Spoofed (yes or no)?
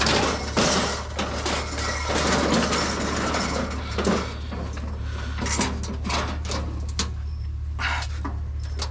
no